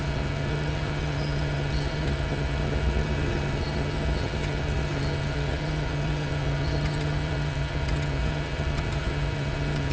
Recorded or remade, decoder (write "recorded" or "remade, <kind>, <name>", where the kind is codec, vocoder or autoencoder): remade, vocoder, HiFi-GAN